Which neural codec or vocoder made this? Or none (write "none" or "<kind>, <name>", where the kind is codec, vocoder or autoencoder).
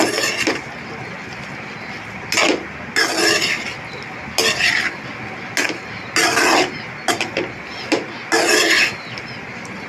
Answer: none